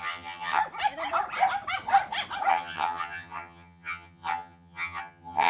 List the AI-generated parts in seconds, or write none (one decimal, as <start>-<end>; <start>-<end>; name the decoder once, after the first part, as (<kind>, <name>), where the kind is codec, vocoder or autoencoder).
0.0-0.6 (vocoder, HiFi-GAN); 2.5-5.5